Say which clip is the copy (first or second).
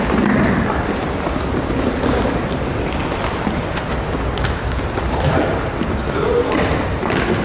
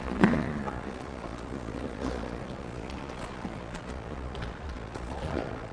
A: second